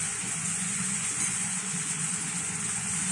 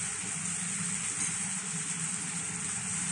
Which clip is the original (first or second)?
second